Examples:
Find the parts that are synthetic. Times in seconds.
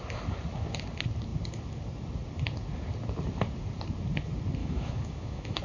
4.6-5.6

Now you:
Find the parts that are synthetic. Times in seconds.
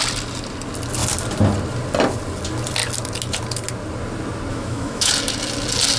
4.5-5.1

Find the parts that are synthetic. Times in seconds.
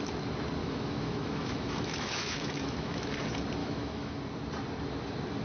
0.6-3.1; 3.6-4.2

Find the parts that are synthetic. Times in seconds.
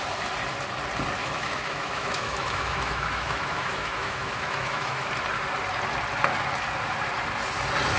1.2-5.1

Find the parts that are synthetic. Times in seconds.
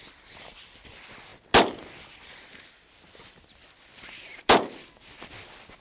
none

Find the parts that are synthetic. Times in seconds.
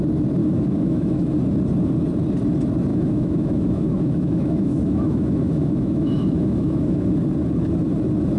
0.4-1.3; 2.9-7.1